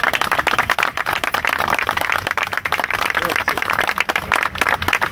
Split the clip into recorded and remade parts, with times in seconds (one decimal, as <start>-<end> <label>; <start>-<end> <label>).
0.0-0.9 recorded; 0.9-4.0 remade; 4.0-5.1 recorded